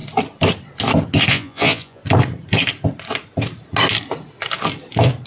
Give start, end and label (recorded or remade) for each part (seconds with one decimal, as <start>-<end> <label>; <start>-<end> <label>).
0.0-1.3 recorded; 1.3-2.0 remade; 2.0-5.3 recorded